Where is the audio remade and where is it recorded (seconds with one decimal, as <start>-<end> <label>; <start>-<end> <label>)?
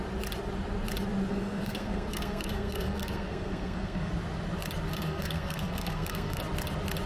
0.0-1.3 recorded; 1.3-4.1 remade; 4.1-4.9 recorded; 4.9-6.4 remade; 6.4-7.1 recorded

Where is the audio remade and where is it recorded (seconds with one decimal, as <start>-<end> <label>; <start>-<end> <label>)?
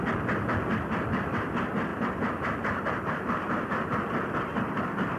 0.0-1.9 recorded; 1.9-5.2 remade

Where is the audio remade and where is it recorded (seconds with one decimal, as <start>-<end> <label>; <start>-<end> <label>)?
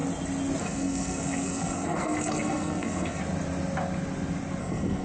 0.0-0.6 recorded; 0.6-3.2 remade; 3.2-4.6 recorded; 4.6-5.0 remade